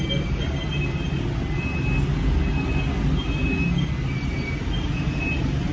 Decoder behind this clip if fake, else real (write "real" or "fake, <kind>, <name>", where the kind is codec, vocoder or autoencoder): real